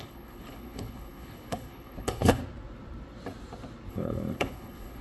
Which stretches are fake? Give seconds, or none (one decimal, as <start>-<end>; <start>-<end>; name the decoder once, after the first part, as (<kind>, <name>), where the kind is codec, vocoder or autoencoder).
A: 0.0-2.4 (codec, HILCodec); 3.9-5.0